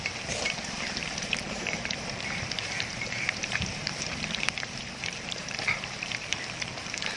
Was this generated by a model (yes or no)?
yes